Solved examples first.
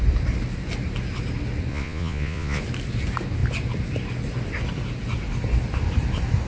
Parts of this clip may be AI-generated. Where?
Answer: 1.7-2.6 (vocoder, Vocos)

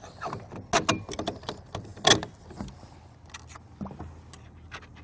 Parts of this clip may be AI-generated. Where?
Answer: none

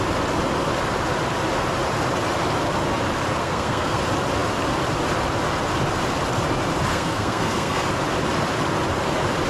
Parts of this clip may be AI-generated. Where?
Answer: 3.4-4.0 (codec, SNAC); 6.9-7.9

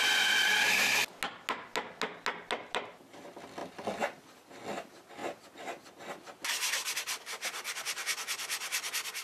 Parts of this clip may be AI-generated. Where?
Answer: none